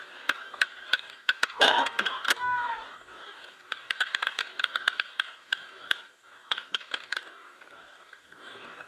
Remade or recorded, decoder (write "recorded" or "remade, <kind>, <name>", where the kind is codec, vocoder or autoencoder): remade, codec, DAC